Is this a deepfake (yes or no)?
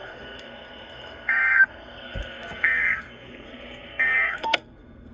yes